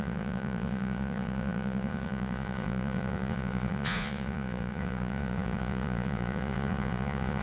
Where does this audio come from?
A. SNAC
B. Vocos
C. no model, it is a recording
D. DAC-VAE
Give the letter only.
B